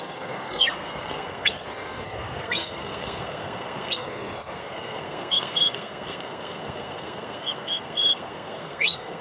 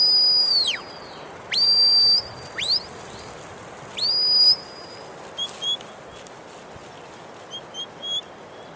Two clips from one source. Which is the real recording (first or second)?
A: second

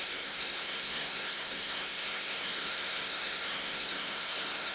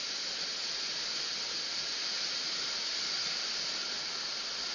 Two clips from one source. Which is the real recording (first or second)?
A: second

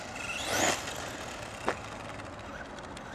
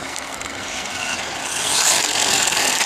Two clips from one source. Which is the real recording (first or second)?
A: first